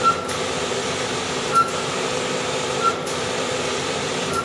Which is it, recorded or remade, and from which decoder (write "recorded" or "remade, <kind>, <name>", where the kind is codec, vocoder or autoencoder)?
remade, vocoder, BigVGAN v2